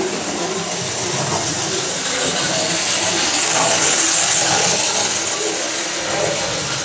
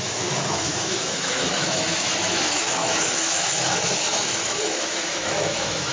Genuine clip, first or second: first